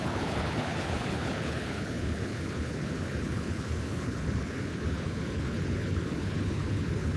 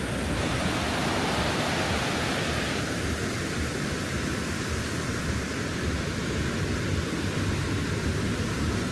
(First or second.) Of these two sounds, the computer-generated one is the first